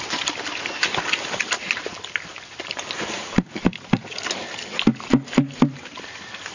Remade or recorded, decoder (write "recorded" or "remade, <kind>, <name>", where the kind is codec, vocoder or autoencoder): recorded